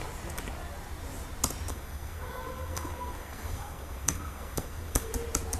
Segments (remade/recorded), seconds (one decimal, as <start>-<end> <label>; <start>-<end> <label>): 0.0-1.7 recorded; 1.7-5.1 remade; 5.1-5.6 recorded